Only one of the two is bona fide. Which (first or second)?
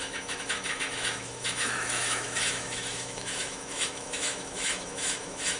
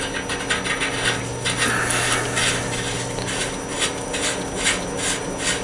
second